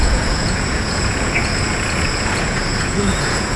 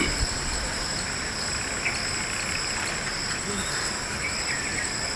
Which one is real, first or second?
second